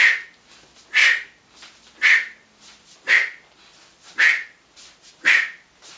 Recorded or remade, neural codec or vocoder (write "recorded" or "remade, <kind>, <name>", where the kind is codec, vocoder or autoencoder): recorded